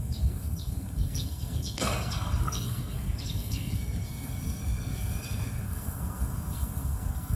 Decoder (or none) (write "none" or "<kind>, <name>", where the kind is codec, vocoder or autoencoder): codec, SNAC